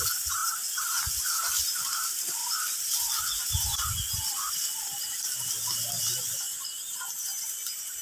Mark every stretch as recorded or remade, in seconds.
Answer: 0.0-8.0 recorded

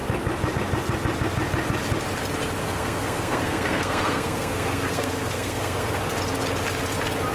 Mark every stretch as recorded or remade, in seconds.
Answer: 0.0-2.6 recorded; 2.6-6.0 remade; 6.0-7.3 recorded

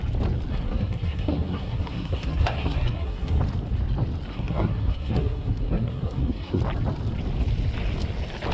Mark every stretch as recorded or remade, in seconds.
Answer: 0.0-0.5 recorded; 0.5-3.4 remade; 3.4-4.3 recorded; 4.3-6.6 remade; 6.6-8.5 recorded

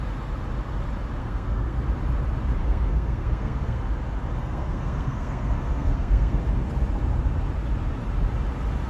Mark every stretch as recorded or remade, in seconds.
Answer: 0.0-1.2 recorded; 1.2-1.8 remade; 1.8-2.6 recorded; 2.6-3.8 remade; 3.8-4.4 recorded; 4.4-6.4 remade; 6.4-8.9 recorded

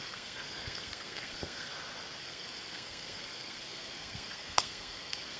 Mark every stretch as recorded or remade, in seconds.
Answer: 0.0-1.7 remade; 1.7-2.2 recorded; 2.2-5.4 remade